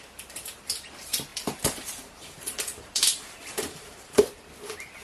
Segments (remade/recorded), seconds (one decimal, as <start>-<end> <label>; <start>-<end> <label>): 0.0-1.3 recorded; 1.3-4.3 remade; 4.3-5.0 recorded